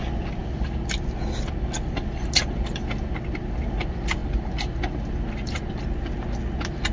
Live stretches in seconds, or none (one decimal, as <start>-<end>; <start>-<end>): 0.0-6.9